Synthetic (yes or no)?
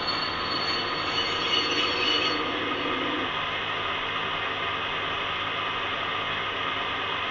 no